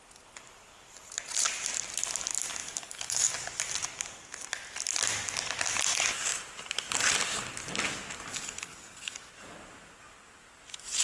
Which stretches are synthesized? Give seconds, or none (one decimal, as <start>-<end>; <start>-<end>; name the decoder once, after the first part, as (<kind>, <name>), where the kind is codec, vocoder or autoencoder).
2.6-3.3 (codec, DAC); 8.3-9.3